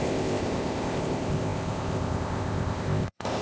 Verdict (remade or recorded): remade